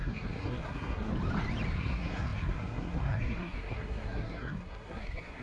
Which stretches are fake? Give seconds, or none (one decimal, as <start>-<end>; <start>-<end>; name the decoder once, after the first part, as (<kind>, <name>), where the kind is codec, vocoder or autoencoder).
0.0-1.1 (codec, SNAC); 1.7-5.4